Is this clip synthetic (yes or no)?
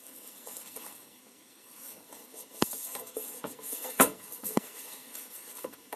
yes